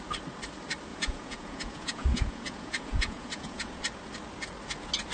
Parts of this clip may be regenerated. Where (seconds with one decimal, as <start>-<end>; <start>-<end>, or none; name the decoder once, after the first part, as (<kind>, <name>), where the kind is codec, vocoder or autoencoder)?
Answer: 0.9-3.8 (vocoder, Vocos)